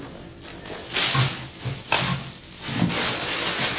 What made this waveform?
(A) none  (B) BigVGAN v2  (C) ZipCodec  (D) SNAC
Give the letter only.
A